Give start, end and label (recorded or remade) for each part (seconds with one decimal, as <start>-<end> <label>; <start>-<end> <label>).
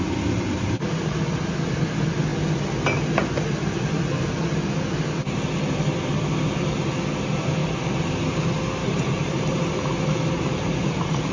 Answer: 0.0-7.6 recorded; 7.6-8.4 remade; 8.4-8.8 recorded; 8.8-11.3 remade